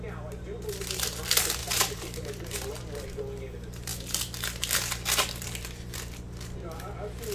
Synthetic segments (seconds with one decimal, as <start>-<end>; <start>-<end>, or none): 1.6-2.8